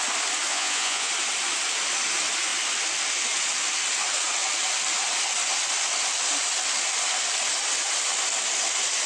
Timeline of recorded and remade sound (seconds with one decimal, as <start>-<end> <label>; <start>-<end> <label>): 0.0-0.5 recorded; 0.5-1.1 remade; 1.1-9.1 recorded